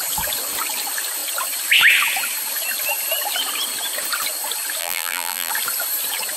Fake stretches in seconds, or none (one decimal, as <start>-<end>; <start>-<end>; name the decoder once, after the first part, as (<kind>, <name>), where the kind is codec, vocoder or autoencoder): 4.8-5.5 (vocoder, BigVGAN v2)